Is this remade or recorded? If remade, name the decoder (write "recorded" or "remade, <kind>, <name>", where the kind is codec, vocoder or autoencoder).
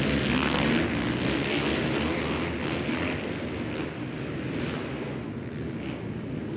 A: recorded